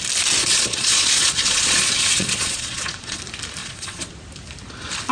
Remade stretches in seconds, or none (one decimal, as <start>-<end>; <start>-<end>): 0.4-3.2; 3.6-4.1